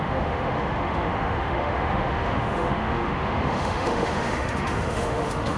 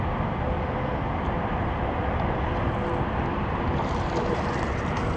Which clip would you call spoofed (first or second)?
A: first